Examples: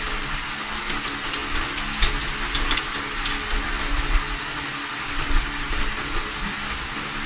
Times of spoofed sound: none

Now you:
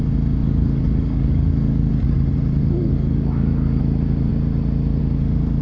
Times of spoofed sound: 0.4-1.9 (codec, DAC); 2.6-3.8

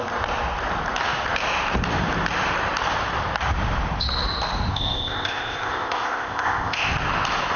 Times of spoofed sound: 4.7-6.9 (codec, ZipCodec)